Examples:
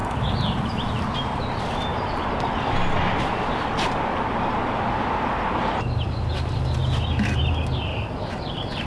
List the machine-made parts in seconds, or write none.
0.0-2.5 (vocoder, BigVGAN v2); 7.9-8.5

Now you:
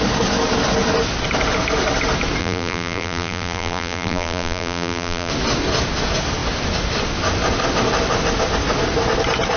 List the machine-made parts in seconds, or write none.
2.4-5.3 (vocoder, BigVGAN v2)

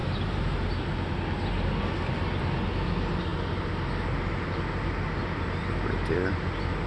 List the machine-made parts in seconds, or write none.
none